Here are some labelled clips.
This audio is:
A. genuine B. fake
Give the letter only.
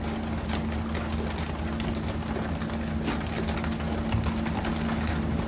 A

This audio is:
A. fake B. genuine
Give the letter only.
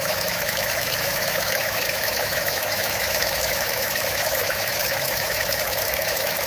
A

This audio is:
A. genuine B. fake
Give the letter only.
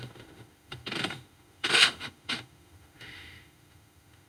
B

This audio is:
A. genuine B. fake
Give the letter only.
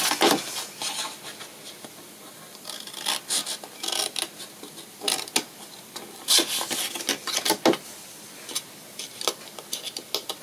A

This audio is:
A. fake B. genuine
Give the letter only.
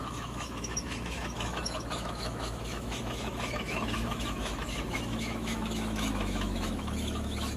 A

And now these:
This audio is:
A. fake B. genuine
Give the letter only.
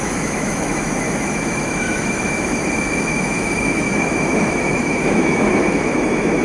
A